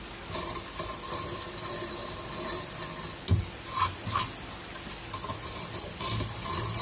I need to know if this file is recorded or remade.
recorded